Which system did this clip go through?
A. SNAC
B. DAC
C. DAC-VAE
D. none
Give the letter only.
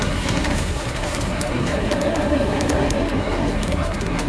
A